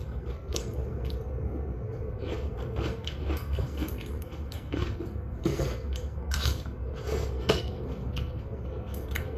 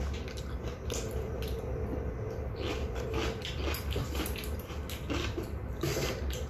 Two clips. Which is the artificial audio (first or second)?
first